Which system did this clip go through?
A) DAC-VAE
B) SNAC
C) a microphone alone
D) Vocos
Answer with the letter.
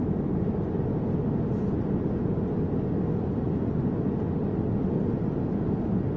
C